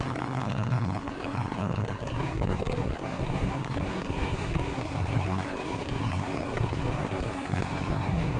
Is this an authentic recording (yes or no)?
no